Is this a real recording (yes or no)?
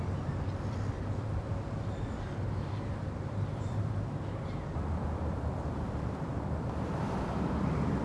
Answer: no